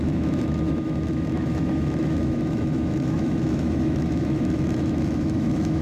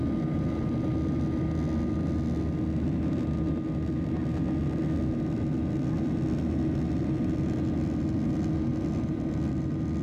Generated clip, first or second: first